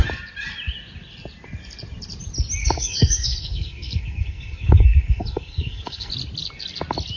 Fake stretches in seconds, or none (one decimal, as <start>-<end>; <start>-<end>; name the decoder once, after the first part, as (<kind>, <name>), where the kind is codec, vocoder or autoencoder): 2.6-6.1 (codec, SNAC)